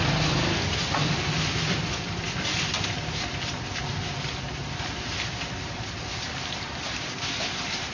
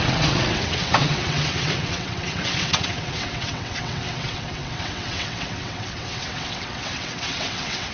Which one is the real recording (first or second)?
first